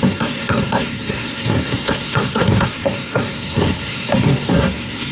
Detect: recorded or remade remade